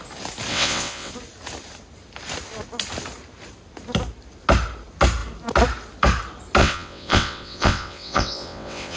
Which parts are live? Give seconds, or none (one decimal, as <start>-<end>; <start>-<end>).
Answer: 0.0-0.5; 1.1-6.6